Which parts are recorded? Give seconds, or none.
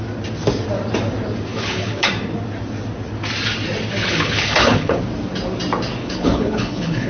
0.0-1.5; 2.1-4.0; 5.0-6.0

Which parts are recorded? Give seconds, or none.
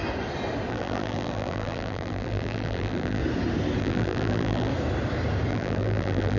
0.0-0.7; 3.2-3.8; 4.7-5.5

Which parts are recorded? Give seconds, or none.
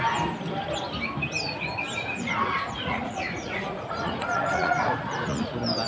0.0-2.0; 5.5-5.9